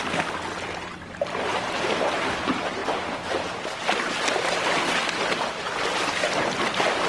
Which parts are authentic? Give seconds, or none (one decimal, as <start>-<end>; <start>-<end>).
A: 0.0-1.5; 2.1-7.1